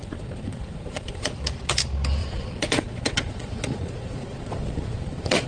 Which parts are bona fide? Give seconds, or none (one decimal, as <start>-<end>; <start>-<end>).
1.4-2.2